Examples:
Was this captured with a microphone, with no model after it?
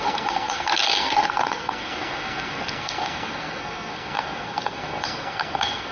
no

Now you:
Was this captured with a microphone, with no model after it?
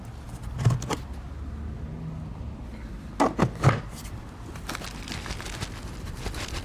yes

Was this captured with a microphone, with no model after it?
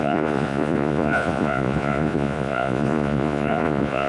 no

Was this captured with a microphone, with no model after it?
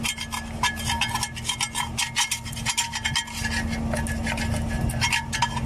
yes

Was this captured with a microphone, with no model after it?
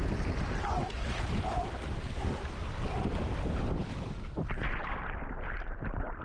yes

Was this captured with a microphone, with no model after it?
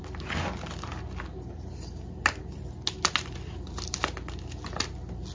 yes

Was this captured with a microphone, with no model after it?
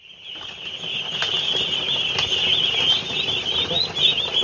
yes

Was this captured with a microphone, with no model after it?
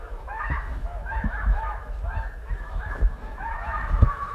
no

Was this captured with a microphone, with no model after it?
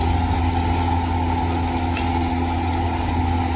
yes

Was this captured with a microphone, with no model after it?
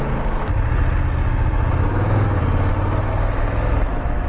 yes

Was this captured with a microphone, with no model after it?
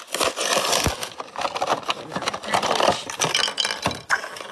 yes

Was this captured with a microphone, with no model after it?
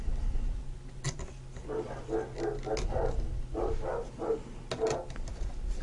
yes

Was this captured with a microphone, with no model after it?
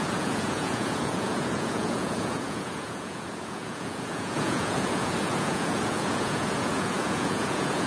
no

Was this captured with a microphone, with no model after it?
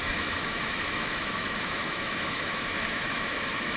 no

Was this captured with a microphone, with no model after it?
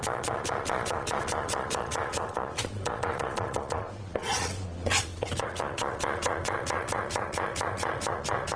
no